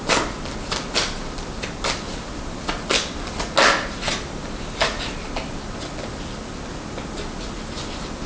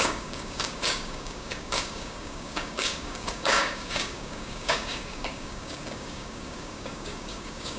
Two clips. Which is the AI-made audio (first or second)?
second